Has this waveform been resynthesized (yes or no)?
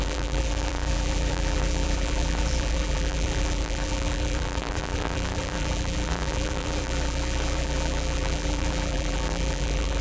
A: yes